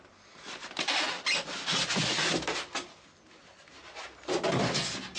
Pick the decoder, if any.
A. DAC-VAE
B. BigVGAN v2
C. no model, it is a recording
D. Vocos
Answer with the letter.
C